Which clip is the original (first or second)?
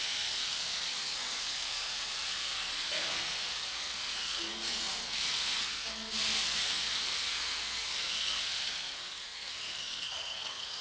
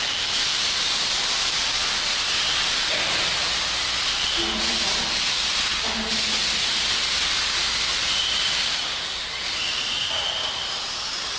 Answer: second